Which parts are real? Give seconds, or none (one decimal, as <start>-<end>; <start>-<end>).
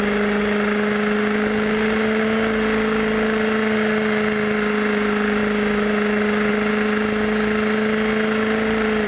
0.0-9.1